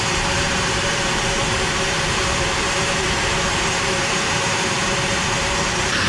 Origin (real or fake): fake